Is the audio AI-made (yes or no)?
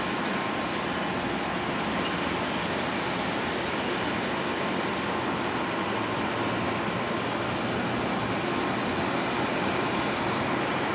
no